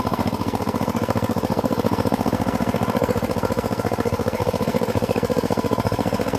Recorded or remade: remade